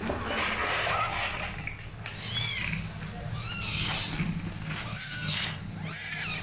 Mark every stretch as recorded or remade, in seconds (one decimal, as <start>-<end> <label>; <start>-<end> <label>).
0.0-4.9 recorded; 4.9-5.6 remade; 5.6-6.4 recorded